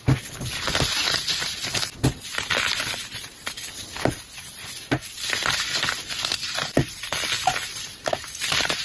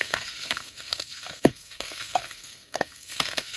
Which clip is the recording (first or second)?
first